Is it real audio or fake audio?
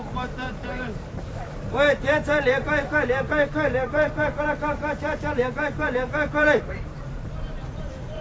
fake